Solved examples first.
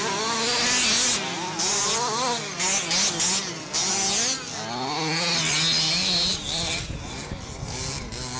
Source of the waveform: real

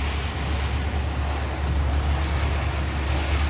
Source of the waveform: real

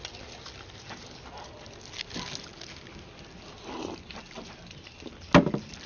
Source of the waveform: real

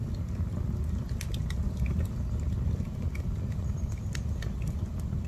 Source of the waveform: real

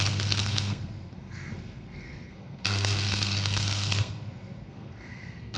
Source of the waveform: fake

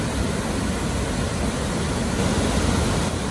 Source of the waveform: real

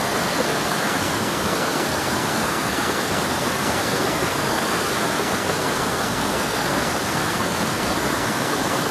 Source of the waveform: fake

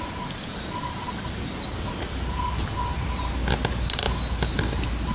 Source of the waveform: real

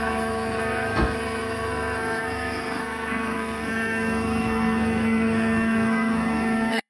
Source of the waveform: fake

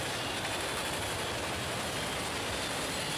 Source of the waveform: real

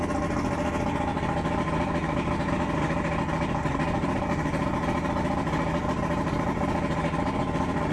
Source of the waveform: real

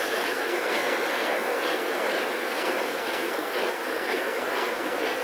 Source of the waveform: fake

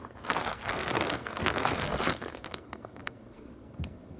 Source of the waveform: fake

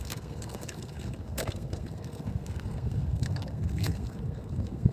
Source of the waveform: fake